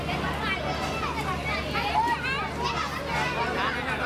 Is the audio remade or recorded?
recorded